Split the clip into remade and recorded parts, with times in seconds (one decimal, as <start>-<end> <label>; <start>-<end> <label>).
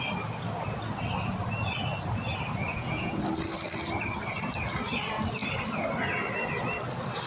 0.0-2.7 recorded; 2.7-3.2 remade; 3.2-7.3 recorded